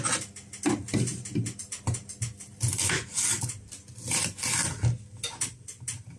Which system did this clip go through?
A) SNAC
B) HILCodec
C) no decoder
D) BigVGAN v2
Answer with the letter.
C